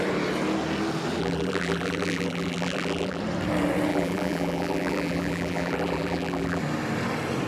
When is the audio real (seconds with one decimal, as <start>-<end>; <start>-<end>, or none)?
0.0-1.2; 3.2-3.9; 6.6-7.5